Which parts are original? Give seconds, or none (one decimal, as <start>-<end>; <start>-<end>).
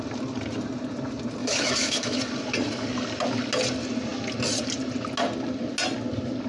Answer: 0.0-1.4; 2.2-6.5